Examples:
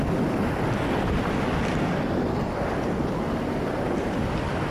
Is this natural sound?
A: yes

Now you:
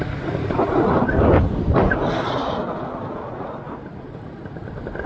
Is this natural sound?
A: yes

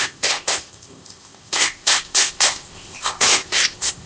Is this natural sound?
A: no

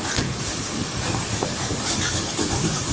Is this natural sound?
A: no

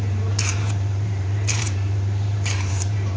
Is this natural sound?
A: no